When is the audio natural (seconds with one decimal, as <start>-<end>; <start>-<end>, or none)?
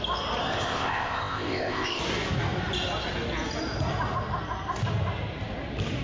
0.0-0.4; 2.0-6.0